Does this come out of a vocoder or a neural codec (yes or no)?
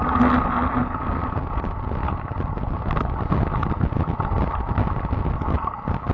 no